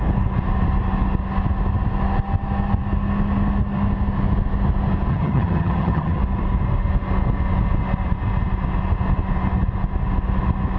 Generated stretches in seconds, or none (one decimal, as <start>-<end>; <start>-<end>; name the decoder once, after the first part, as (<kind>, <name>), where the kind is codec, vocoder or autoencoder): 5.1-6.2 (vocoder, HiFi-GAN)